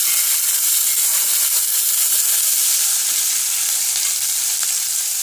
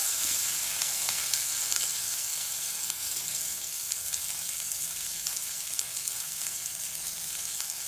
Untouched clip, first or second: first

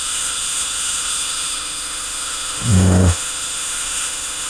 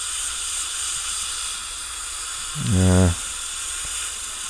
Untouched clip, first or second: second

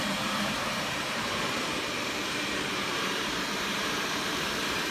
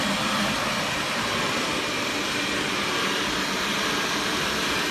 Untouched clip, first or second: second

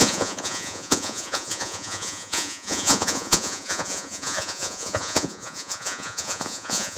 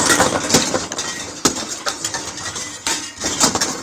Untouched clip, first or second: second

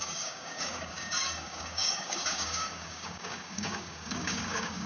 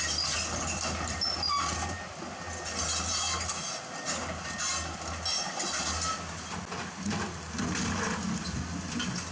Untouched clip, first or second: second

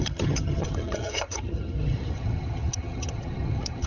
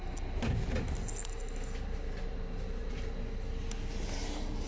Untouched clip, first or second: second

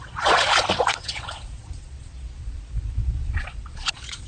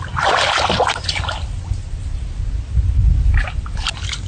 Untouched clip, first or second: second